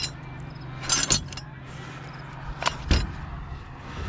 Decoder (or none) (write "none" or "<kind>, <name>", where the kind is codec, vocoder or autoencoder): none